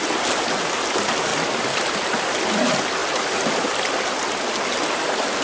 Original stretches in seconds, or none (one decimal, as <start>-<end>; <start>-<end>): 0.0-1.3; 1.8-3.0; 4.2-5.4